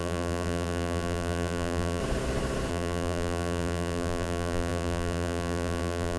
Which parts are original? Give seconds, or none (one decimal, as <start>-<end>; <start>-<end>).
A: 2.0-2.7